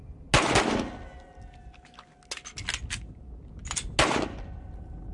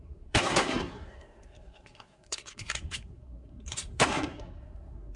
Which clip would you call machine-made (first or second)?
second